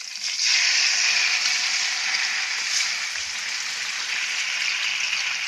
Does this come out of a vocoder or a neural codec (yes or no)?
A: no